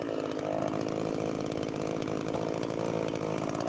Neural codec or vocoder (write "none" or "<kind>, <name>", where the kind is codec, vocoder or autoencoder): none